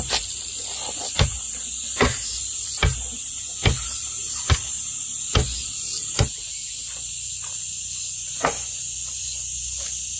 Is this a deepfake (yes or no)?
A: no